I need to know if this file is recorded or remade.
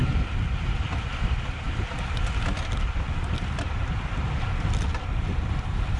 remade